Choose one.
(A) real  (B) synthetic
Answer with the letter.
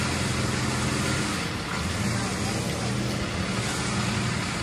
A